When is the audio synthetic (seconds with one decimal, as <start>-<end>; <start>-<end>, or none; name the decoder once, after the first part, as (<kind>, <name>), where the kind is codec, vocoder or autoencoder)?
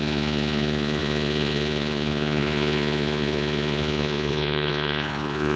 0.0-5.6 (vocoder, Vocos)